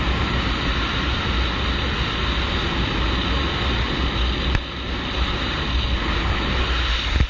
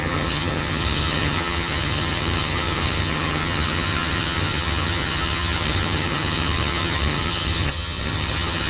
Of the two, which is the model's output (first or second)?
second